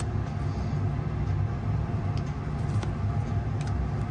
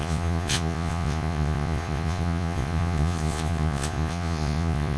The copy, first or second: second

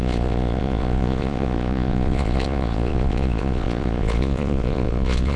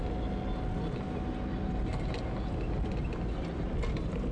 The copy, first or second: first